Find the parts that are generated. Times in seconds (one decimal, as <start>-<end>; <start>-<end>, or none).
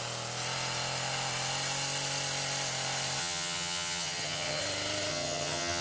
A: 3.2-4.6; 5.1-5.8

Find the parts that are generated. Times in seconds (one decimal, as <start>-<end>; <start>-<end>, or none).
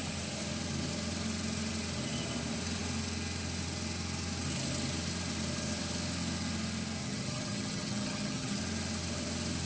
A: 7.0-8.6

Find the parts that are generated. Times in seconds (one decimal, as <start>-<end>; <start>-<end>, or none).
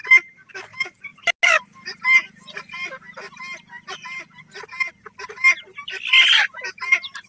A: none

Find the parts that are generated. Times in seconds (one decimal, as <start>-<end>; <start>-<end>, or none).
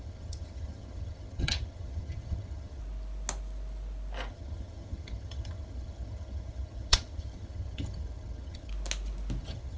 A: 0.0-2.8; 4.3-8.7; 9.4-9.8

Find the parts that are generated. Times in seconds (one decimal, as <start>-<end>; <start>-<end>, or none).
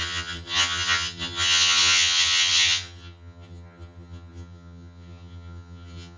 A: 0.0-6.2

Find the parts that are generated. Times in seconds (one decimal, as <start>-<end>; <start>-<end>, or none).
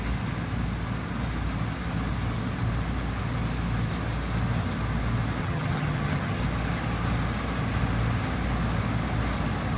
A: 5.4-6.4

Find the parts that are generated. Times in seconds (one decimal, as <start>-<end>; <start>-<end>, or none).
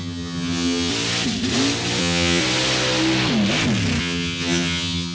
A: 0.0-0.9; 2.0-2.4; 4.0-5.1